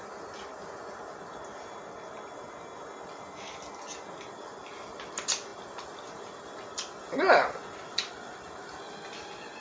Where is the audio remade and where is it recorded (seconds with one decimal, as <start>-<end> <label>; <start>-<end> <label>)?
0.0-9.6 recorded